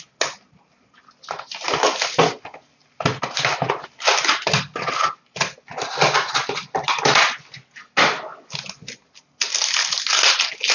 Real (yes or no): yes